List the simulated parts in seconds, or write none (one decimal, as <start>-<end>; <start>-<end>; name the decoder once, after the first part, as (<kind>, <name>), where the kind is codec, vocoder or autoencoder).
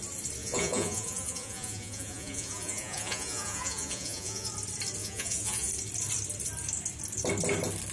0.4-4.5 (vocoder, Vocos); 5.0-5.7